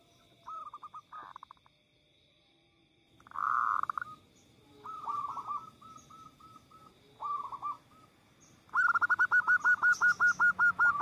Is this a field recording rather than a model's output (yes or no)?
yes